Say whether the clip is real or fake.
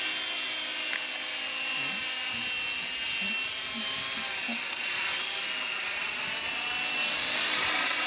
real